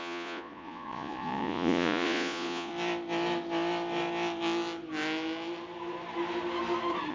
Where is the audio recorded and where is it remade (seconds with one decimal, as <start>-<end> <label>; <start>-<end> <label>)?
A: 0.0-2.7 remade; 2.7-7.1 recorded